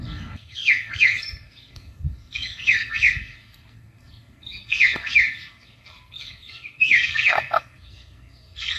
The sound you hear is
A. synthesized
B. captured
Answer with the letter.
A